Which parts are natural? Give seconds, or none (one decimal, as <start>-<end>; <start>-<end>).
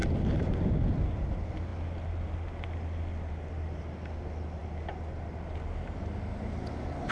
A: 0.0-7.1